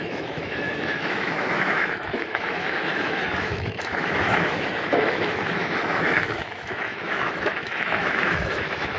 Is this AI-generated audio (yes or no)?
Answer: yes